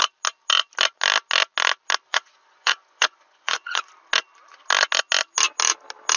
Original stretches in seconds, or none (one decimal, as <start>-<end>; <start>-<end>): 0.0-2.1; 3.9-6.2